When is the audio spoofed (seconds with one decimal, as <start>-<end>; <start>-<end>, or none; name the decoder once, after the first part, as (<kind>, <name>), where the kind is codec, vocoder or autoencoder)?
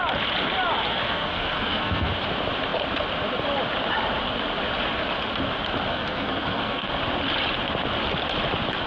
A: 0.9-2.1 (codec, SNAC); 5.9-6.9